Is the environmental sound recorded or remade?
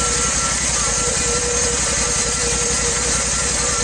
remade